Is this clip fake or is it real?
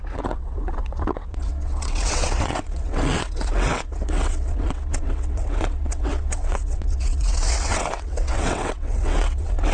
fake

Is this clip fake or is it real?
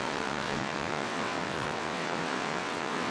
fake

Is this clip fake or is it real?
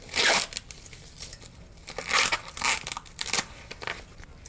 real